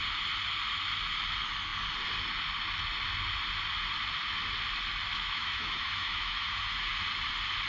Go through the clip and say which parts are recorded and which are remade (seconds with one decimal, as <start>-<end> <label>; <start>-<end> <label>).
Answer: 0.0-5.1 recorded; 5.1-6.9 remade; 6.9-7.7 recorded